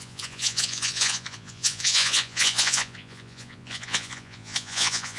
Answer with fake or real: fake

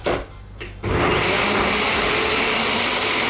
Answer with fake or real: real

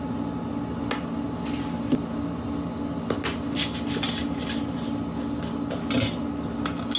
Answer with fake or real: real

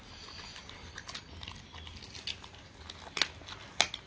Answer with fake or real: real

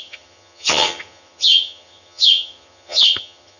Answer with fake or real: fake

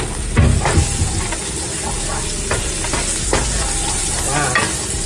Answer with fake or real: real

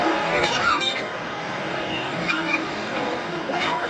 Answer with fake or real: fake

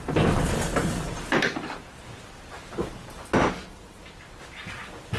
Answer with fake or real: real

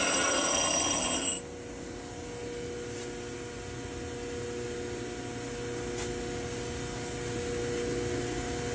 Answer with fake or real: real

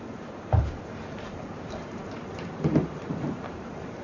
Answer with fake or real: fake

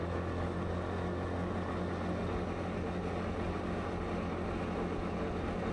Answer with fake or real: real